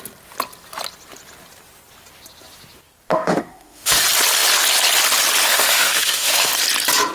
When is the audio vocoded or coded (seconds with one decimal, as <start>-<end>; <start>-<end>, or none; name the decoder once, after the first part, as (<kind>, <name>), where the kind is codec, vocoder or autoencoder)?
3.1-4.0 (autoencoder, DAC-VAE); 5.5-6.5

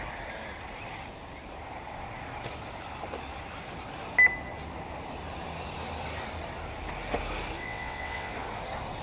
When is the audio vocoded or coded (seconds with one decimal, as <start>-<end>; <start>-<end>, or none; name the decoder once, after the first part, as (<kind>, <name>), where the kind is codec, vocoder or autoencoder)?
7.6-8.3 (vocoder, WaveNeXt)

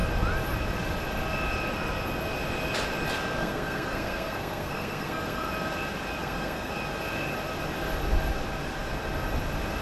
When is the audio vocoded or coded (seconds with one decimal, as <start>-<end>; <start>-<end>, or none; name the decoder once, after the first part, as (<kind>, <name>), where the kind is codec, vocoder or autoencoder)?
3.4-5.5 (codec, SNAC); 6.2-6.7

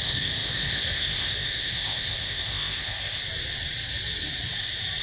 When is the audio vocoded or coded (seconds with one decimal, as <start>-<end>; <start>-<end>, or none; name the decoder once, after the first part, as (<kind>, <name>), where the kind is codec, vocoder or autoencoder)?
0.0-3.2 (codec, ZipCodec)

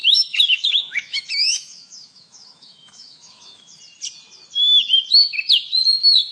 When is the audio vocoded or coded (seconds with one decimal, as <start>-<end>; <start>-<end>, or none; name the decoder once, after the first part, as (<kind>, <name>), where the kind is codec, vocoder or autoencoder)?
0.0-3.8 (autoencoder, DAC-VAE)